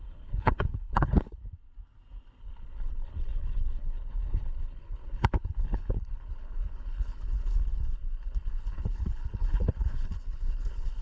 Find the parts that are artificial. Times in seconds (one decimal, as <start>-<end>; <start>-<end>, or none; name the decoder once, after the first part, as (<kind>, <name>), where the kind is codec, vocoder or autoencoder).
0.0-1.4 (codec, HILCodec); 2.4-11.0